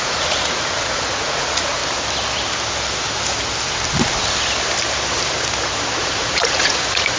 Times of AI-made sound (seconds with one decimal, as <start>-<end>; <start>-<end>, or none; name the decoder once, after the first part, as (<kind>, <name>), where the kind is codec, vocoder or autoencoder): 0.0-1.8 (vocoder, Vocos); 6.0-7.2

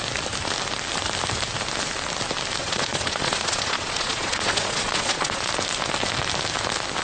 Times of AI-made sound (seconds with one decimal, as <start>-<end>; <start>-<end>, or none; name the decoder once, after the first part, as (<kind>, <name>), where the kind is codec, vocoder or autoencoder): 2.6-5.5 (vocoder, Vocos)

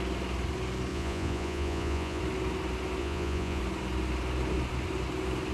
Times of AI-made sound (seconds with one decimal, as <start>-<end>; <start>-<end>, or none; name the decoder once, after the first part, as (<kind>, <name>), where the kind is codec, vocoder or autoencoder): 0.9-2.2 (vocoder, Vocos); 3.0-3.6

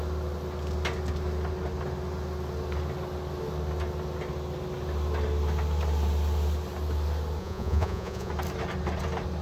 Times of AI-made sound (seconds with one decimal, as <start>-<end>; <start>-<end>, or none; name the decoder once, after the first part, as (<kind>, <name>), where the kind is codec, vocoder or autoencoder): 7.4-8.3 (vocoder, Vocos)

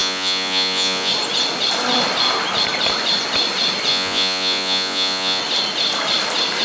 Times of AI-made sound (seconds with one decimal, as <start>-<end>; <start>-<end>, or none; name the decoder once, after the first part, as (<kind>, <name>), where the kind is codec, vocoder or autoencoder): 0.0-1.1 (vocoder, Vocos); 3.9-5.4

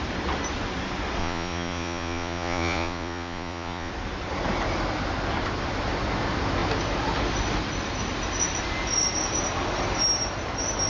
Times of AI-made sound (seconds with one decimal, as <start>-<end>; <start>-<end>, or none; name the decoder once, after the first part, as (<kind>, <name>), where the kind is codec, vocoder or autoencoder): 1.2-3.9 (vocoder, Vocos)

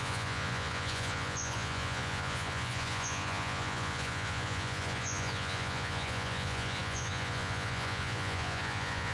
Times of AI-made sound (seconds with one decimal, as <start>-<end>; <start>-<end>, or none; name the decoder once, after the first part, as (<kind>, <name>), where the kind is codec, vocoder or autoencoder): 0.0-9.1 (vocoder, Vocos)

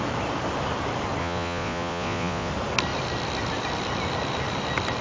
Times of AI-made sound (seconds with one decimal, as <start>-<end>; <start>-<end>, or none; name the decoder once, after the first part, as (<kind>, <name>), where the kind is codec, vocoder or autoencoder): 1.2-2.5 (vocoder, Vocos)